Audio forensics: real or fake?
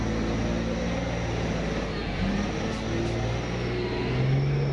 real